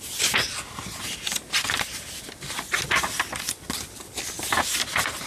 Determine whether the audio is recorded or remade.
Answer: recorded